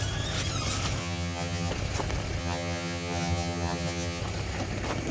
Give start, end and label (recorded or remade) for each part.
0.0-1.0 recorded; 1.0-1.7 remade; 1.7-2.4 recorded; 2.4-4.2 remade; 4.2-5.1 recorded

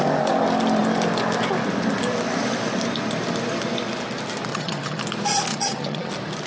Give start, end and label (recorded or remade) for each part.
0.0-4.5 recorded; 4.5-5.0 remade; 5.0-5.5 recorded; 5.5-6.1 remade; 6.1-6.5 recorded

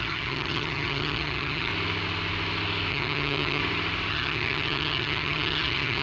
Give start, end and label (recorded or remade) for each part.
0.0-1.7 remade; 1.7-2.9 recorded; 2.9-3.6 remade; 3.6-4.1 recorded; 4.1-6.0 remade

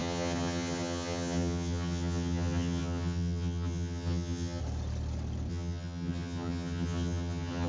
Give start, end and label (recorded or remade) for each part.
0.0-4.6 remade; 4.6-5.5 recorded; 5.5-7.7 remade

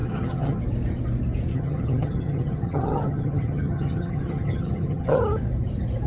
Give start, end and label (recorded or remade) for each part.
0.0-0.6 remade; 0.6-1.5 recorded; 1.5-5.2 remade; 5.2-6.1 recorded

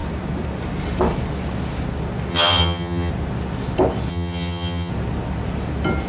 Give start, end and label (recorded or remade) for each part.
0.0-2.3 recorded; 2.3-3.1 remade; 3.1-4.1 recorded; 4.1-4.9 remade; 4.9-6.1 recorded